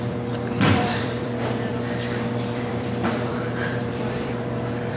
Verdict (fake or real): fake